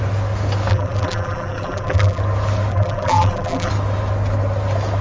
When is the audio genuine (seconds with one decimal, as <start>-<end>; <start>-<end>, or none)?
0.0-0.7; 2.2-2.7; 3.7-5.0